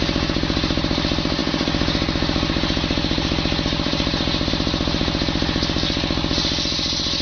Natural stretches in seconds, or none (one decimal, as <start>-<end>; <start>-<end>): 0.0-7.2